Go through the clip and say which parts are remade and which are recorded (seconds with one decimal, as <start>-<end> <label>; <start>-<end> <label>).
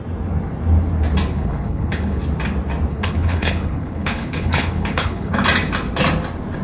0.0-1.3 recorded; 1.3-2.2 remade; 2.2-2.9 recorded; 2.9-5.3 remade; 5.3-6.6 recorded